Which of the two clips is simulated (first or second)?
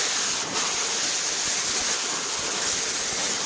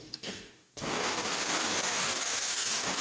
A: second